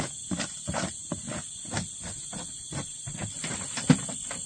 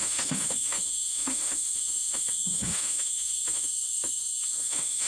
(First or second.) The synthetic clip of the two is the second